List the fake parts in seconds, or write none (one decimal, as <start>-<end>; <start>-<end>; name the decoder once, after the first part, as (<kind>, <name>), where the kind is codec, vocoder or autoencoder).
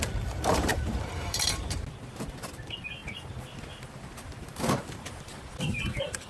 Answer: 0.7-1.5 (vocoder, BigVGAN v2)